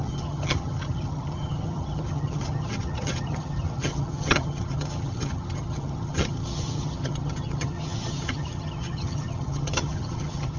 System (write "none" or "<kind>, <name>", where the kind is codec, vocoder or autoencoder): vocoder, HiFi-GAN